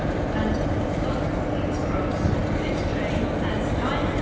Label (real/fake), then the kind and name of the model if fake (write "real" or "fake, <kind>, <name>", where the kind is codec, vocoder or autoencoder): real